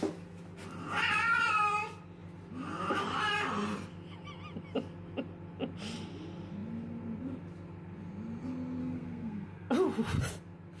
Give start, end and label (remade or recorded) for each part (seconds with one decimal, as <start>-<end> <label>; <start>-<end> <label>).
0.0-8.8 recorded; 8.8-9.7 remade; 9.7-10.8 recorded

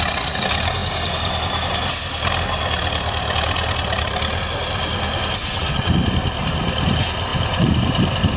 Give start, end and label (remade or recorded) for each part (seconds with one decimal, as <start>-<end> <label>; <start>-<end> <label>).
0.0-5.4 recorded; 5.4-5.9 remade; 5.9-8.4 recorded

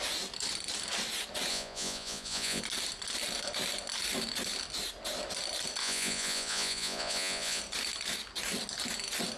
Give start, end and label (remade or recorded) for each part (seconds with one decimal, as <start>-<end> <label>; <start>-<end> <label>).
0.0-1.5 recorded; 1.5-2.6 remade; 2.6-5.8 recorded; 5.8-7.6 remade; 7.6-9.4 recorded

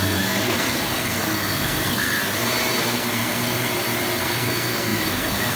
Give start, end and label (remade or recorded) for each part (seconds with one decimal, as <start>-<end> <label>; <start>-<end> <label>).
0.0-2.2 remade; 2.2-2.8 recorded; 2.8-3.7 remade; 3.7-4.2 recorded; 4.2-5.6 remade

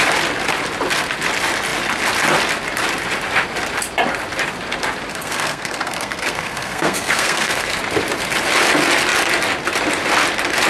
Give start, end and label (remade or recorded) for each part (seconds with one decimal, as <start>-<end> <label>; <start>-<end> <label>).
0.0-5.1 recorded; 5.1-7.8 remade; 7.8-10.7 recorded

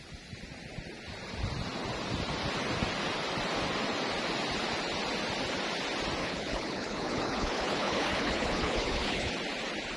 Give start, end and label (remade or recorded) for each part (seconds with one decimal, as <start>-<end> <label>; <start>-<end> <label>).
0.0-6.2 recorded; 6.2-9.3 remade; 9.3-10.0 recorded

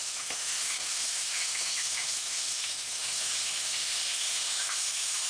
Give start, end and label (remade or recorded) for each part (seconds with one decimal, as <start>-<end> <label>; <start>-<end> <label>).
0.0-5.3 remade